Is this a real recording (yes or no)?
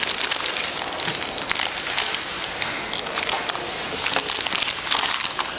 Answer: yes